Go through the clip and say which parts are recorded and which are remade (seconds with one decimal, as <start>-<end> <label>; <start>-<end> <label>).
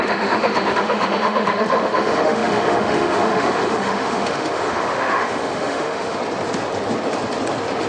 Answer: 0.0-6.2 remade; 6.2-7.9 recorded